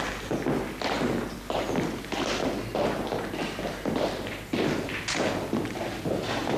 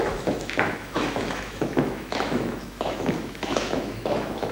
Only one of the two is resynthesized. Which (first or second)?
second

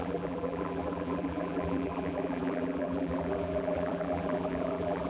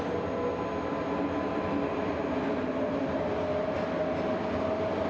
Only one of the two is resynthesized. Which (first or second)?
first